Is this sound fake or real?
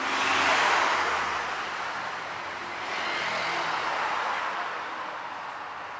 real